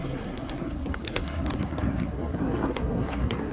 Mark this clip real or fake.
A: fake